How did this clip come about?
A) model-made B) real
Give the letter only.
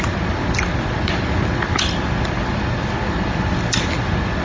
B